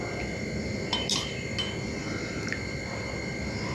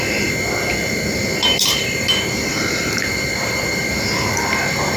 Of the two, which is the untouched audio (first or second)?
first